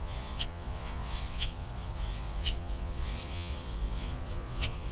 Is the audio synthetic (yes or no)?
yes